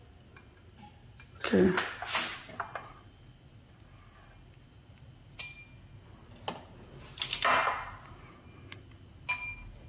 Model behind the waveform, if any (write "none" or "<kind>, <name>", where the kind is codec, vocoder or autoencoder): none